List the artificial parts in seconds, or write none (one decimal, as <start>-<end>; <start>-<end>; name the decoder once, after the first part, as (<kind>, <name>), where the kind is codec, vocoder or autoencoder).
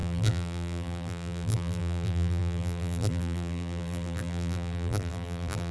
0.0-5.7 (vocoder, BigVGAN v2)